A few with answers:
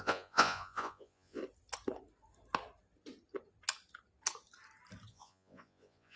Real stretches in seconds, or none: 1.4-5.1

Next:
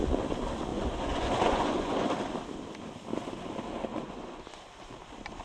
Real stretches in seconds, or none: 0.0-0.7; 2.1-3.9; 4.6-5.4

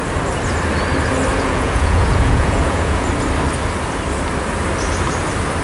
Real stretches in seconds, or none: 0.0-1.3; 3.1-5.6